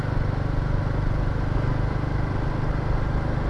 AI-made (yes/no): no